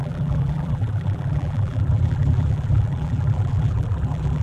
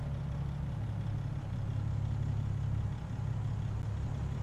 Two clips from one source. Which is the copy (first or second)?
first